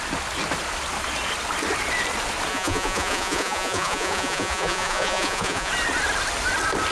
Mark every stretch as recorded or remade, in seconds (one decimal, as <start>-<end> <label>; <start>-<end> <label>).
0.0-2.5 recorded; 2.5-5.7 remade; 5.7-6.9 recorded